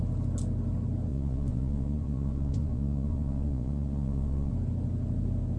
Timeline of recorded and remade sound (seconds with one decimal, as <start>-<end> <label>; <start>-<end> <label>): 0.0-1.1 recorded; 1.1-4.5 remade; 4.5-5.6 recorded